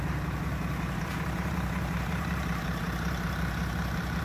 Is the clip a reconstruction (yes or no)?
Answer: yes